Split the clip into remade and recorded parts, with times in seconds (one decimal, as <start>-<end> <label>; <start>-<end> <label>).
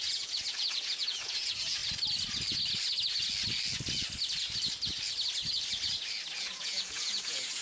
0.0-1.8 remade; 1.8-6.4 recorded; 6.4-7.6 remade